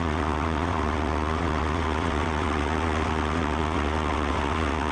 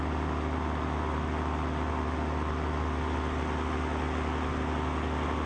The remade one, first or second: first